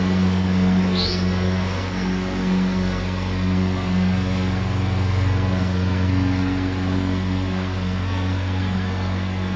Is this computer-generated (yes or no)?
yes